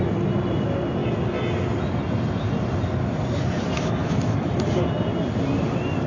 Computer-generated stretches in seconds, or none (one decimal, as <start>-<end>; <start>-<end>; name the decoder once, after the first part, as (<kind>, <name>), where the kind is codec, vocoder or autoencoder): none